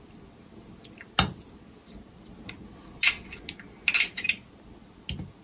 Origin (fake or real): real